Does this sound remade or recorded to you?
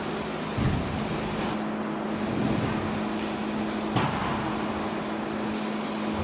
recorded